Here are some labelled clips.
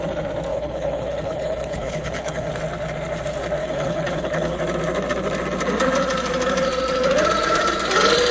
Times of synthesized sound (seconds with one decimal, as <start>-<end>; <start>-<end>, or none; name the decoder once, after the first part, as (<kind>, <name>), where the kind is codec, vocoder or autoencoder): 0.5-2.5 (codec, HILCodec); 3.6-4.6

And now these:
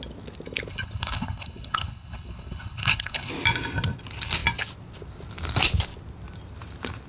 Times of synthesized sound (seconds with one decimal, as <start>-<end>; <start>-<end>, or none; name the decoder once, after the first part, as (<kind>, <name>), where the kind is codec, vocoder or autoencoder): 0.7-3.3 (codec, HILCodec)

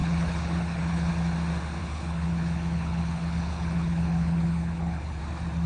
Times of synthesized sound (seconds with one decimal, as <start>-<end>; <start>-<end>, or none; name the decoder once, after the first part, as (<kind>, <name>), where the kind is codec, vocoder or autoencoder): 0.0-1.1 (codec, HILCodec); 1.8-5.2

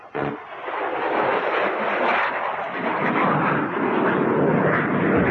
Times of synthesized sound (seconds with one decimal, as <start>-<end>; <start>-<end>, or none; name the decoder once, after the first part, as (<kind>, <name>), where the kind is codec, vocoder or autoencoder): none